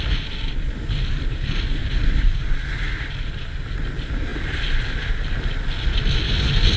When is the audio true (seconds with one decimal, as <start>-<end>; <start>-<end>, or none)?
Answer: 0.0-6.8